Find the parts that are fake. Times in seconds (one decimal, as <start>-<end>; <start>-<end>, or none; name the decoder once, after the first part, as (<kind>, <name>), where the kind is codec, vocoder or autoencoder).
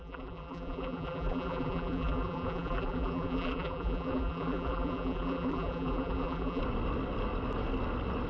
0.0-6.6 (vocoder, BigVGAN v2)